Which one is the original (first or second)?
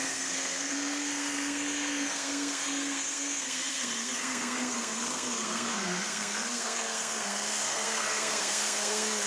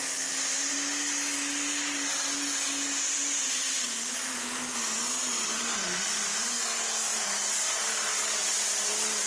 second